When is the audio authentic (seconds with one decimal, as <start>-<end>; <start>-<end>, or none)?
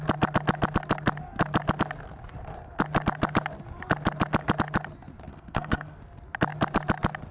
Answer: 0.0-5.3; 6.0-7.3